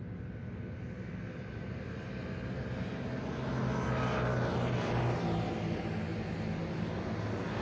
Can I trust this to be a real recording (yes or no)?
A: yes